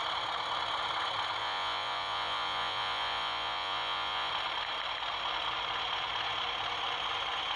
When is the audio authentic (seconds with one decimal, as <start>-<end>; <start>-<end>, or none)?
0.0-1.4; 4.3-7.6